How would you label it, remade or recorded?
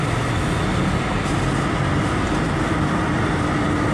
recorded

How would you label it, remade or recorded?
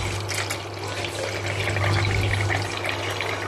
recorded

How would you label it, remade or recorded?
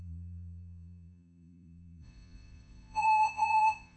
remade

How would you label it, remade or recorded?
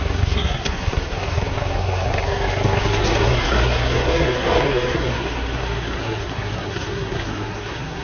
remade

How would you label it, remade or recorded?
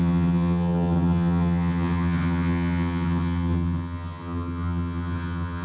remade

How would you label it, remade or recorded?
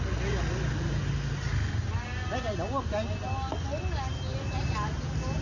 recorded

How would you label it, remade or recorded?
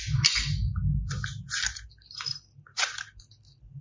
recorded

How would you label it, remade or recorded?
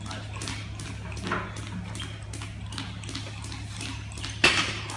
recorded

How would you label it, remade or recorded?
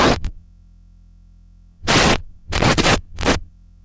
remade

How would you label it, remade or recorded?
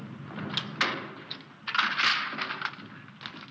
recorded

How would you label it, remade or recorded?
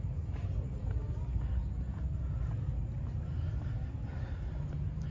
recorded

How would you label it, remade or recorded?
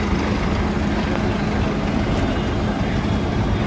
recorded